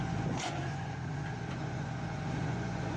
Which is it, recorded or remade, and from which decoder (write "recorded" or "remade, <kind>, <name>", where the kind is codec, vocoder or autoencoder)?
remade, vocoder, Vocos